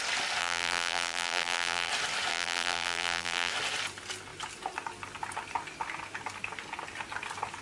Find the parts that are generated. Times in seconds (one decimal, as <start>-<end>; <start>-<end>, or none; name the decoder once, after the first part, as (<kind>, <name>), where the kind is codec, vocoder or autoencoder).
0.4-1.9 (vocoder, BigVGAN v2); 2.3-3.5